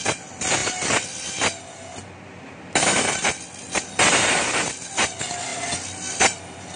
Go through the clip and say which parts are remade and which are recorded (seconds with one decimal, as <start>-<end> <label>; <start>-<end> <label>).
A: 0.0-6.8 recorded